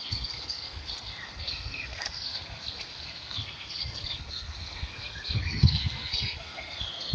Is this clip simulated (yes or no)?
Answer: yes